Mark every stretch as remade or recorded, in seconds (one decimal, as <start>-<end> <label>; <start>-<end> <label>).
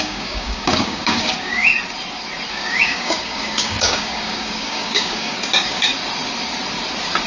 0.0-1.7 remade; 1.7-2.5 recorded; 2.5-5.9 remade; 5.9-7.3 recorded